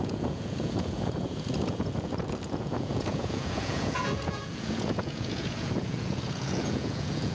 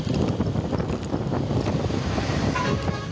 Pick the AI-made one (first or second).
first